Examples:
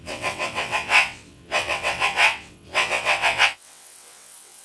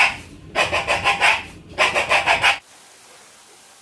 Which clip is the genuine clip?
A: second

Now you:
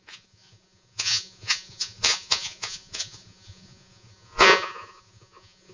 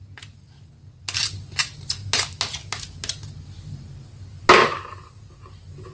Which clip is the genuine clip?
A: second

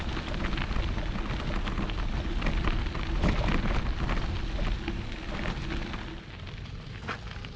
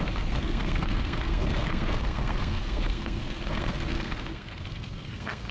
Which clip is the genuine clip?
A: first